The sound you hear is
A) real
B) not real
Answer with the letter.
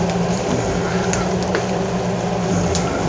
A